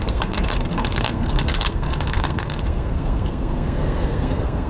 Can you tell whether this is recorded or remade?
remade